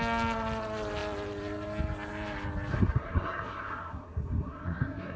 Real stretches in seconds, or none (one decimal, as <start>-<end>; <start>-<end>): 0.0-2.7